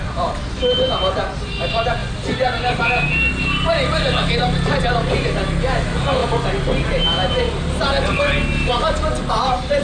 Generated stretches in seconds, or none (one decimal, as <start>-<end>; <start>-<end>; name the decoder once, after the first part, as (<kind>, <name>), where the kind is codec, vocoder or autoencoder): none